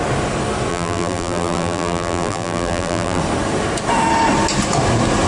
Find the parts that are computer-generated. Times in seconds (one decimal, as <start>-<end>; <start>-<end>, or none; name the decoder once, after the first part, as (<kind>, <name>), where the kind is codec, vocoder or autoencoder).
0.7-3.2 (vocoder, BigVGAN v2)